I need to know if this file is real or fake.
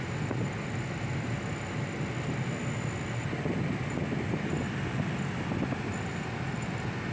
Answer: real